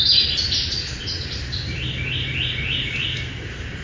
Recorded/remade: recorded